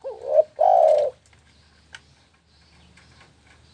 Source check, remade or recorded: recorded